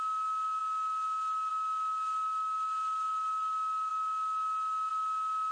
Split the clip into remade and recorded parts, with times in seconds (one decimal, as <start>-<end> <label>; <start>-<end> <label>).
0.0-5.5 recorded